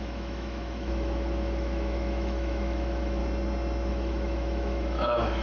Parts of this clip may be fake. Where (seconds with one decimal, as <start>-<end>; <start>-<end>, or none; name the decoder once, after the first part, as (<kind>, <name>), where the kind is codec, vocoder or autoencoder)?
0.0-3.2 (autoencoder, DAC-VAE); 3.9-5.4